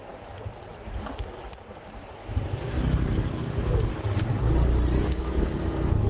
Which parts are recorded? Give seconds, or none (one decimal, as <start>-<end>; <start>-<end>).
0.0-6.1